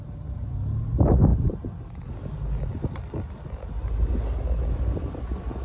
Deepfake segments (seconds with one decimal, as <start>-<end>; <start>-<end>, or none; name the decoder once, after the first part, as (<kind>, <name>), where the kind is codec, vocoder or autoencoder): none